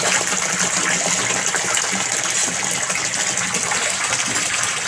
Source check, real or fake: real